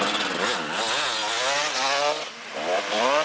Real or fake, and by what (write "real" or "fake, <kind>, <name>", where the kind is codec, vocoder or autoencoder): real